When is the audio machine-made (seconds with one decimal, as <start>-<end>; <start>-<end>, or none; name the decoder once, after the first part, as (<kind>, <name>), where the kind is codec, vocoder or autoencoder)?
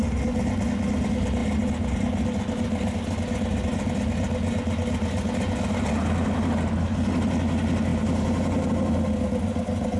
7.9-8.7 (vocoder, BigVGAN v2)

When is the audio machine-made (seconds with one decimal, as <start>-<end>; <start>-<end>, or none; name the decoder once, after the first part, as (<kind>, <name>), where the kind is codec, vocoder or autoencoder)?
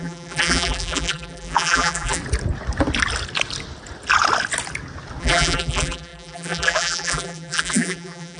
0.0-2.2 (vocoder, BigVGAN v2); 5.2-8.4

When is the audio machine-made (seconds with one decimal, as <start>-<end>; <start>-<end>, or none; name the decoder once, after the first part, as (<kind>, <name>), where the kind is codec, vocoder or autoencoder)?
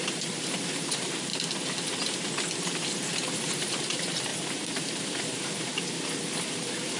0.0-1.3 (vocoder, BigVGAN v2); 2.6-7.0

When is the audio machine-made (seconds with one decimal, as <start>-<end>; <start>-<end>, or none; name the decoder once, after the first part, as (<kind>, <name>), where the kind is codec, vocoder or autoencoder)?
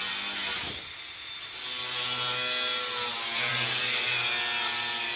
none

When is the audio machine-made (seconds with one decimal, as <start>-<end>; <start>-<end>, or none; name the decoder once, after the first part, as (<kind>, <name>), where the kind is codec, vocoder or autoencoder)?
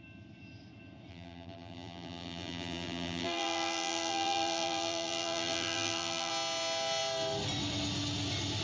1.1-6.3 (vocoder, BigVGAN v2)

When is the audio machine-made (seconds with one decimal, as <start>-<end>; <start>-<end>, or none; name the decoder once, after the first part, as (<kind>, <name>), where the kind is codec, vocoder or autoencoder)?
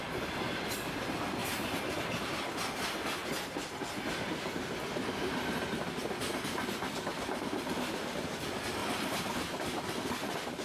1.4-2.2 (vocoder, BigVGAN v2); 8.8-9.9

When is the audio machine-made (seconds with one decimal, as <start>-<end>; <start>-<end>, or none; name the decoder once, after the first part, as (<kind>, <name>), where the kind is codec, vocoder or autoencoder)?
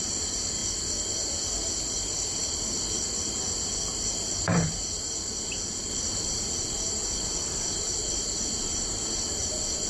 0.0-0.6 (vocoder, BigVGAN v2); 1.8-9.9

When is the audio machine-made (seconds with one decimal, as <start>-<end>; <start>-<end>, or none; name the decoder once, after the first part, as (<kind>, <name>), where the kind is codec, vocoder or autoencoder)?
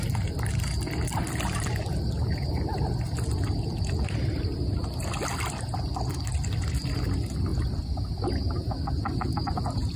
none